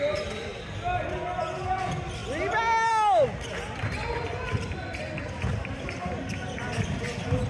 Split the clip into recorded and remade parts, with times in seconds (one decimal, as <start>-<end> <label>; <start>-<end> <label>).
0.0-7.5 recorded